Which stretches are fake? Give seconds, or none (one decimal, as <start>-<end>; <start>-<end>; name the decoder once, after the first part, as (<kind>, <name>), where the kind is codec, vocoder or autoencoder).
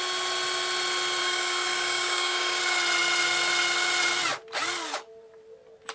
1.2-2.6 (codec, DAC)